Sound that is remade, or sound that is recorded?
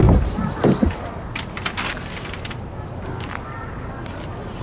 recorded